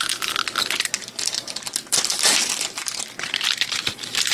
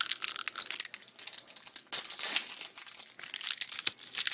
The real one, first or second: second